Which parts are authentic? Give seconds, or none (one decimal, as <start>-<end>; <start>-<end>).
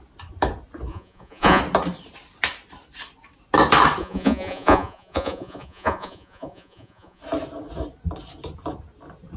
0.0-0.9; 1.6-4.0; 7.2-9.4